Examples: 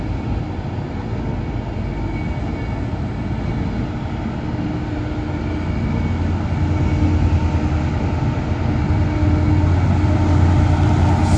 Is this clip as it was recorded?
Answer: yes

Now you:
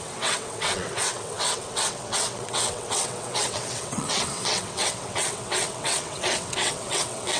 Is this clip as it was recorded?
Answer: no